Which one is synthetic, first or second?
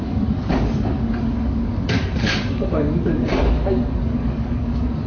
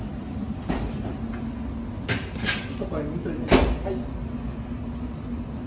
first